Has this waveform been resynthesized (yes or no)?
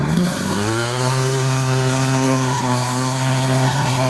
yes